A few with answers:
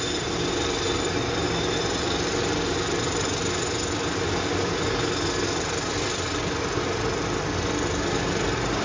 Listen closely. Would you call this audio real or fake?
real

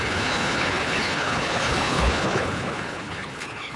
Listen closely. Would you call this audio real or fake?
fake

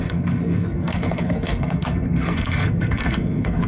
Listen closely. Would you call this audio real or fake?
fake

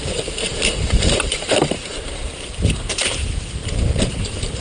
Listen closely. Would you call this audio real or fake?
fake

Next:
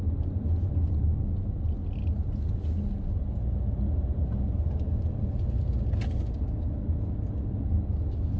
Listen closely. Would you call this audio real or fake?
real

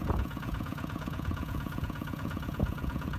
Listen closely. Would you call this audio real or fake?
fake